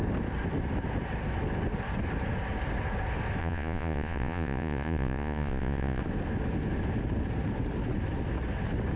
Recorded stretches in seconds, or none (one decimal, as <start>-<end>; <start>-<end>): 0.0-3.4; 6.0-9.0